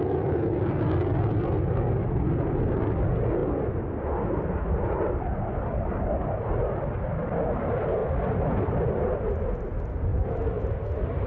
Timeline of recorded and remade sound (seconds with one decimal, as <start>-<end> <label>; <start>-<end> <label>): 0.0-11.3 recorded